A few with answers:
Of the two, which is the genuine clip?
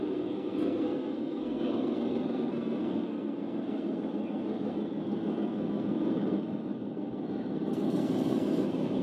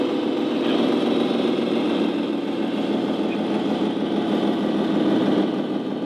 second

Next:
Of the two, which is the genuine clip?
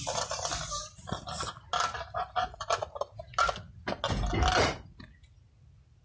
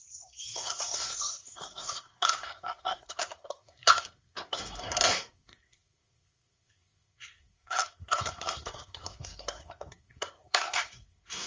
first